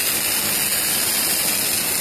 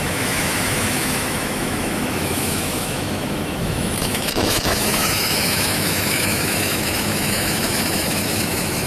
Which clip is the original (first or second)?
first